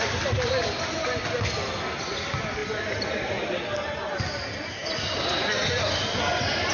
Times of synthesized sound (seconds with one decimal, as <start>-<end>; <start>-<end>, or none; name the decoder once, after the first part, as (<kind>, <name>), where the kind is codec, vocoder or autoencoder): none